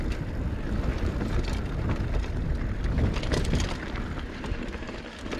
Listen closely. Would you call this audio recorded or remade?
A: recorded